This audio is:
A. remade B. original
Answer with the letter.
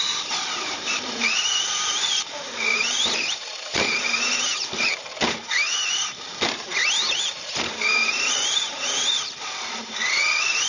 A